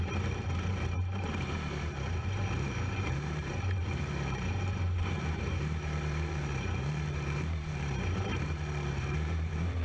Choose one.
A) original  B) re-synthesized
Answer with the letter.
B